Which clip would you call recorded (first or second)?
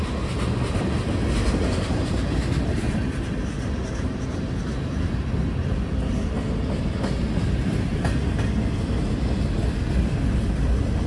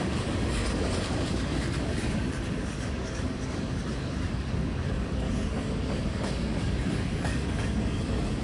first